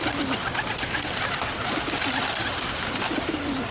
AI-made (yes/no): no